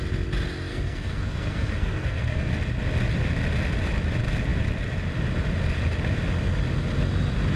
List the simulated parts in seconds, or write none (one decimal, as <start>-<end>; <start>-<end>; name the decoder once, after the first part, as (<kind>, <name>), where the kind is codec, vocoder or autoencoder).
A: 0.7-2.5 (codec, SNAC)